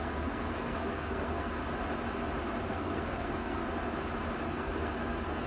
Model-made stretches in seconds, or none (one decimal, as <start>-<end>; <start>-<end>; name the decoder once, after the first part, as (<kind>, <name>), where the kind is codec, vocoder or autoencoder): 0.0-1.6 (codec, SNAC); 2.7-3.6; 4.5-5.5